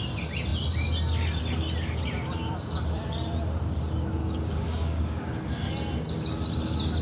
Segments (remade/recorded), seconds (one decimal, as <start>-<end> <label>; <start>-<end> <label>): 0.0-4.2 recorded; 4.2-5.7 remade; 5.7-7.0 recorded